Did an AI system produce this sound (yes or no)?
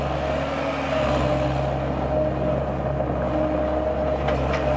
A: no